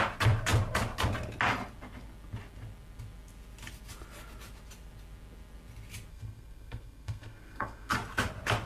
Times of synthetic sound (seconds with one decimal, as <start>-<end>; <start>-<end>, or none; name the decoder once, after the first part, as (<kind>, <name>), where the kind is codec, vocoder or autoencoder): 6.1-7.9 (codec, SNAC)